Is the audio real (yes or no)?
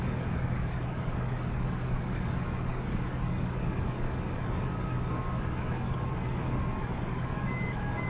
no